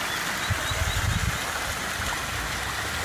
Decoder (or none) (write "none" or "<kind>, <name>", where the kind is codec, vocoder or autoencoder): none